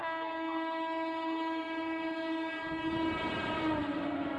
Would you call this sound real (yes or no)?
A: yes